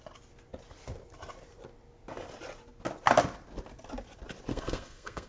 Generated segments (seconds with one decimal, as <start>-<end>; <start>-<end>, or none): 4.5-5.3